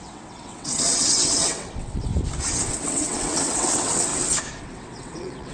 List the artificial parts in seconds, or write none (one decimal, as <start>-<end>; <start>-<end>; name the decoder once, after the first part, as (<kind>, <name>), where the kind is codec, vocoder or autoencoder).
0.0-2.1 (vocoder, WaveNeXt); 2.7-4.1; 4.6-5.5